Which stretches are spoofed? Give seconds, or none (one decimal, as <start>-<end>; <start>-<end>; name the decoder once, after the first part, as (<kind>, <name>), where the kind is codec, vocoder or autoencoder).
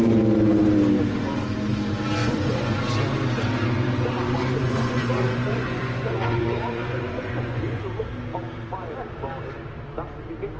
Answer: 2.2-2.8 (vocoder, Vocos); 4.6-7.8